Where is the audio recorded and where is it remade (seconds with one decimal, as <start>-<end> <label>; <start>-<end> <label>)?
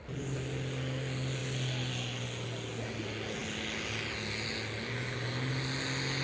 0.0-6.2 recorded